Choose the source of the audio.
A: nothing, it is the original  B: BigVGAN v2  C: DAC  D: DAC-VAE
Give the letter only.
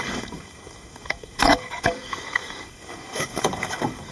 C